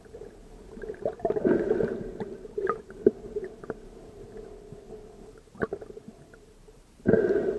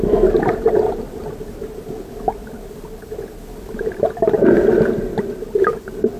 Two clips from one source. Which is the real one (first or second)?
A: second